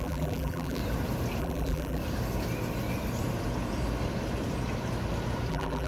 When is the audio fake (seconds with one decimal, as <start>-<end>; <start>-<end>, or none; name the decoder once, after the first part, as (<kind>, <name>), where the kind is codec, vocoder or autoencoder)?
0.0-0.8 (vocoder, BigVGAN v2); 1.4-2.0; 5.5-5.9